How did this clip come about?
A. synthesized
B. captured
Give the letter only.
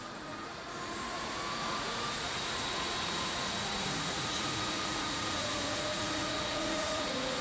A